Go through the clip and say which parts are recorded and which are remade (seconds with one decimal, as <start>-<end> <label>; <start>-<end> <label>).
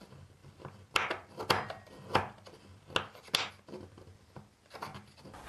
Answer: 0.0-5.5 recorded